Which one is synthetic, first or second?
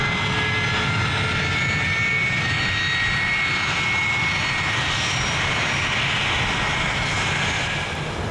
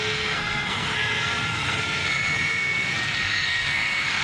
second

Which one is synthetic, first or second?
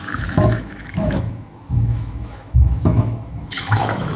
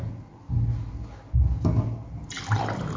first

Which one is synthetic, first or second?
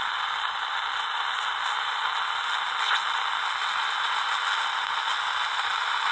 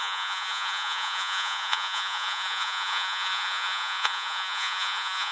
second